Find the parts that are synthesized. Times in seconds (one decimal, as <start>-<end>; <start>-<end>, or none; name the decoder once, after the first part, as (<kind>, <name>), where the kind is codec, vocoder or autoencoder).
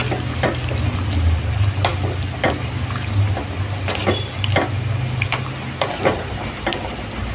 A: none